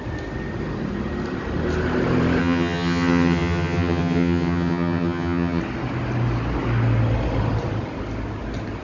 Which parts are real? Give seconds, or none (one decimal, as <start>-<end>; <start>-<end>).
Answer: 0.0-2.4; 5.6-8.8

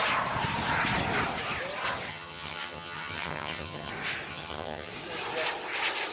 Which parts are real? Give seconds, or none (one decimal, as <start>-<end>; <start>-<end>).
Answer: 0.0-2.1; 3.9-4.3; 4.9-6.1

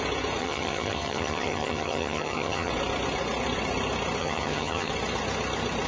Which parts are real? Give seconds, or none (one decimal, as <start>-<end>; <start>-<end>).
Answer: 0.0-0.4; 2.7-4.2; 4.9-5.9

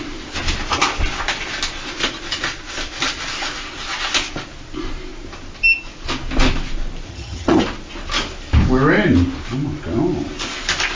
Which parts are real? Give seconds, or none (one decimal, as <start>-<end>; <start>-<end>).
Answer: 0.0-7.1; 7.6-11.0

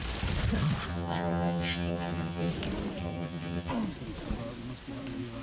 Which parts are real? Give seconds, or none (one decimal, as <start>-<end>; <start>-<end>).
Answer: 0.0-0.9; 2.5-3.0; 3.7-5.4

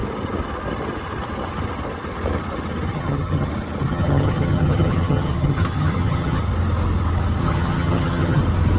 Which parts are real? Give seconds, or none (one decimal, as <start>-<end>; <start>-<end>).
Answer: 0.0-2.9; 3.5-3.9; 6.4-7.4; 8.4-8.8